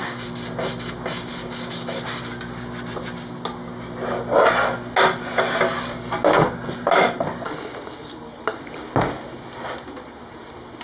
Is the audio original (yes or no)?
yes